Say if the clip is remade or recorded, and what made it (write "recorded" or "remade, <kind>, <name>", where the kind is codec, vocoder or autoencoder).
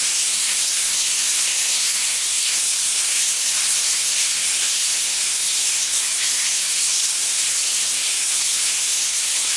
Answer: remade, codec, SNAC